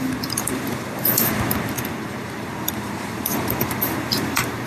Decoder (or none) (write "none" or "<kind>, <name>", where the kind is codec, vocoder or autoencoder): vocoder, BigVGAN v2